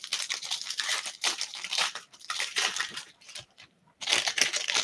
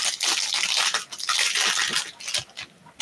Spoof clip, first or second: first